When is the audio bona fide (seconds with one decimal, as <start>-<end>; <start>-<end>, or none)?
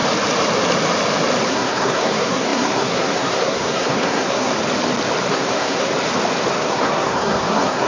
0.0-1.5; 4.5-5.3; 5.9-6.5